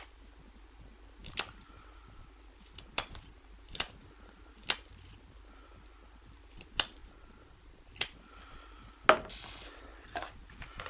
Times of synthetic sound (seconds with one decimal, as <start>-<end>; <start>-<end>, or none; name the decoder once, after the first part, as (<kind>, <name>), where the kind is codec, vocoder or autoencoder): 7.0-7.9 (vocoder, BigVGAN v2)